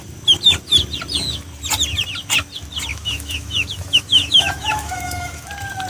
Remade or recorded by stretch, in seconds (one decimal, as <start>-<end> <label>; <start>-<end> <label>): 0.0-2.9 recorded; 2.9-5.5 remade; 5.5-5.9 recorded